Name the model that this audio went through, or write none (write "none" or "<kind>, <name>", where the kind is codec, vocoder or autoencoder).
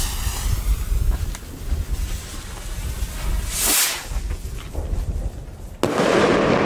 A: none